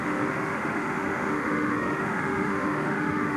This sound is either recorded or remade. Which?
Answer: remade